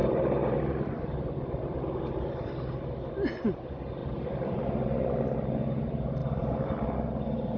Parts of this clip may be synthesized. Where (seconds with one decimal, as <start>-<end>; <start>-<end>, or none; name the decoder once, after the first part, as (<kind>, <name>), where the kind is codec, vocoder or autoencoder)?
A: 0.0-2.3 (vocoder, BigVGAN v2); 4.0-5.2; 6.2-7.6